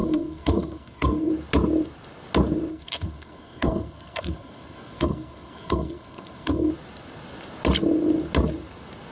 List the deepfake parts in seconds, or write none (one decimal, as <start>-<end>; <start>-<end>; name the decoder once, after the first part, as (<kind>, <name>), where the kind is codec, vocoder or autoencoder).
0.0-1.3 (codec, SNAC); 2.7-6.7